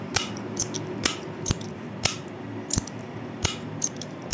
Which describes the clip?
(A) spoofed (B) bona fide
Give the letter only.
A